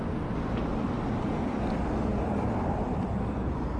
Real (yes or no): yes